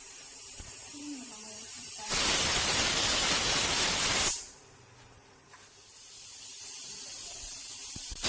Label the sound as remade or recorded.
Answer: remade